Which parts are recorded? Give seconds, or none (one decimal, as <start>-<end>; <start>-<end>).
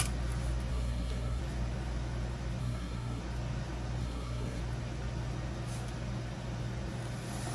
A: 0.0-0.7; 1.4-2.6; 3.2-4.0; 4.6-7.5